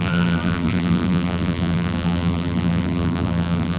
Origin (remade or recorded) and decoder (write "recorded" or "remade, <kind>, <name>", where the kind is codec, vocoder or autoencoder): remade, vocoder, BigVGAN v2